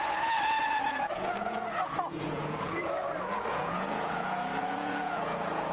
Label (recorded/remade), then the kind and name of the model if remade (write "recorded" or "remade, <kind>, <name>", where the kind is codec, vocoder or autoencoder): remade, vocoder, Vocos